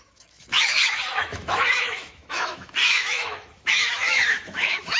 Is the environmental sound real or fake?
fake